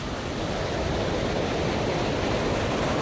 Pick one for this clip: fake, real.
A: real